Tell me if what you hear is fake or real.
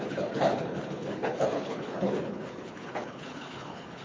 fake